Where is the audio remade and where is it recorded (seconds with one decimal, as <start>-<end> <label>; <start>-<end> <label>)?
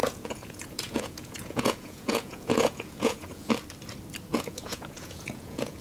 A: 0.0-3.5 remade; 3.5-4.3 recorded; 4.3-5.8 remade